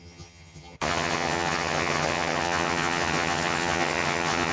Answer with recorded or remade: remade